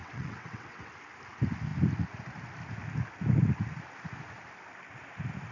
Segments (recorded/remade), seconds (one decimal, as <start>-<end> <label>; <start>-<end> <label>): 0.0-0.9 remade; 0.9-5.5 recorded